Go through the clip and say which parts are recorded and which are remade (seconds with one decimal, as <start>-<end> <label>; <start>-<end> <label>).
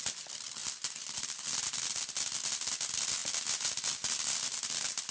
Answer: 0.0-5.1 recorded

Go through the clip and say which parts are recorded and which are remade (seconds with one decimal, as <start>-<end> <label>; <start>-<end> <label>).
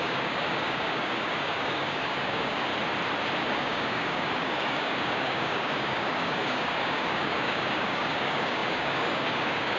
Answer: 0.0-2.7 remade; 2.7-3.5 recorded; 3.5-9.8 remade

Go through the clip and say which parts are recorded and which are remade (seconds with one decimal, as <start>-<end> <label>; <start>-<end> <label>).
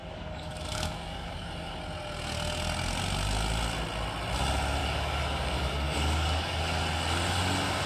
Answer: 0.0-1.8 remade; 1.8-4.8 recorded; 4.8-6.6 remade; 6.6-7.9 recorded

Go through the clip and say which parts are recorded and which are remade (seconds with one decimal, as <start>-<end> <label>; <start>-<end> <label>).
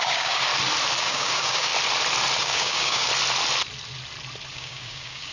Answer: 0.0-0.5 remade; 0.5-1.0 recorded; 1.0-1.7 remade; 1.7-2.4 recorded; 2.4-3.1 remade; 3.1-4.5 recorded; 4.5-5.3 remade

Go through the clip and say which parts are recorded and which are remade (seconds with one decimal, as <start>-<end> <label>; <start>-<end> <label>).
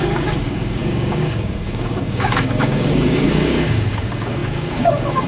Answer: 0.0-5.3 remade